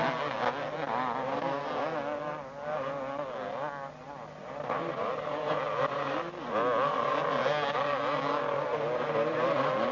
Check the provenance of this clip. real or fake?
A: real